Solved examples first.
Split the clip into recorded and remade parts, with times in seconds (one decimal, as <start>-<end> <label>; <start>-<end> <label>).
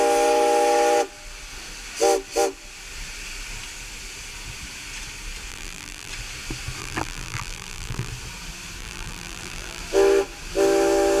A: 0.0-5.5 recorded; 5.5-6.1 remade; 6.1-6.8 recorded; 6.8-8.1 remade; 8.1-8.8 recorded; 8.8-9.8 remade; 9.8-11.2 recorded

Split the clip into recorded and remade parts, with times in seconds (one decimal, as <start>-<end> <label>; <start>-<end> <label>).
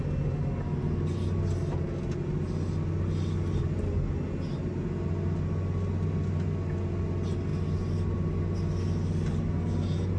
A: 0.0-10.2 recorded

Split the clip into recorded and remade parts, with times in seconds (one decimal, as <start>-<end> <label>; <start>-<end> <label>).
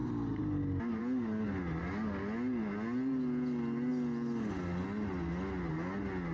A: 0.0-6.3 recorded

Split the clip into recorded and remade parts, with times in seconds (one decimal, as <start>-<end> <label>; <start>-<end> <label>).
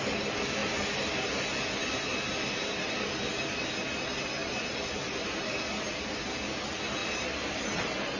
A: 0.0-4.4 recorded; 4.4-5.4 remade; 5.4-7.0 recorded; 7.0-8.2 remade